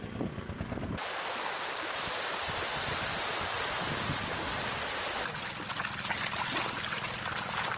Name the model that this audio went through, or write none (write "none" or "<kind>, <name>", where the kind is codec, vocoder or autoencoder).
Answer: none